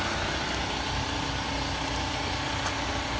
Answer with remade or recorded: recorded